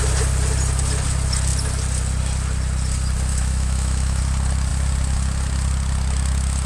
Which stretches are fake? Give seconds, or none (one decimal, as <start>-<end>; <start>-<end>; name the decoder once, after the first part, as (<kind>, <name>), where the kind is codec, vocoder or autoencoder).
3.3-4.2 (autoencoder, DAC-VAE)